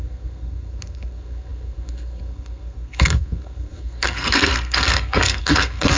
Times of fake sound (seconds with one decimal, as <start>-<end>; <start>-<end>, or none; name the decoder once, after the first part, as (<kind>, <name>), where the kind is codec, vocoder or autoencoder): 0.0-6.0 (codec, SNAC)